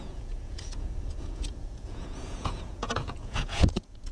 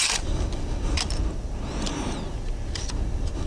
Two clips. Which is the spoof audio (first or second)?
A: first